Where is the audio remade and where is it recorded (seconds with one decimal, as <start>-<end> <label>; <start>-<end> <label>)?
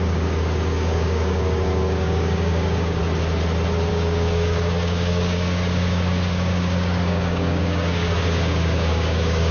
0.0-3.0 remade; 3.0-3.9 recorded; 3.9-9.5 remade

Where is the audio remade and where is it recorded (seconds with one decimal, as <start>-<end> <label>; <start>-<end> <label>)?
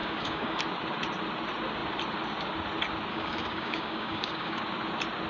0.0-0.6 remade; 0.6-3.1 recorded; 3.1-4.6 remade; 4.6-5.3 recorded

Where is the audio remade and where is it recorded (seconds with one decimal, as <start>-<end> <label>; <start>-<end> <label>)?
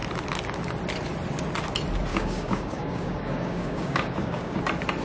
0.0-2.1 recorded; 2.1-4.6 remade; 4.6-5.0 recorded